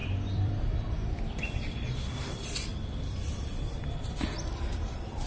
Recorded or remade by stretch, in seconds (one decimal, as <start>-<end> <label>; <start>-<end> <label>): 0.0-2.7 remade; 2.7-3.2 recorded; 3.2-5.3 remade